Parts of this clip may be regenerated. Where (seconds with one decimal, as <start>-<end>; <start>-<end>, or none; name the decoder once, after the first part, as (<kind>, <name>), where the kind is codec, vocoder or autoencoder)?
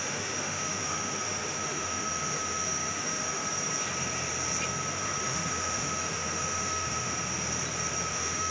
0.0-3.4 (autoencoder, DAC-VAE); 5.2-7.1; 8.1-8.5